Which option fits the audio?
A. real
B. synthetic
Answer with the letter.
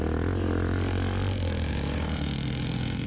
A